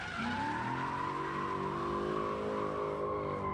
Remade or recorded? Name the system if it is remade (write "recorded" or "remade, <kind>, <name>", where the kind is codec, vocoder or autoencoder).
recorded